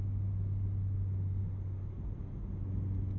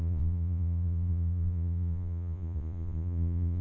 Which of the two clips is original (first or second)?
first